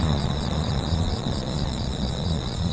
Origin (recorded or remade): remade